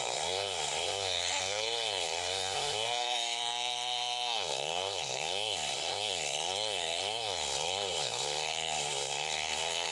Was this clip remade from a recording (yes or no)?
yes